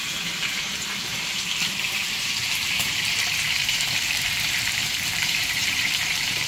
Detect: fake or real fake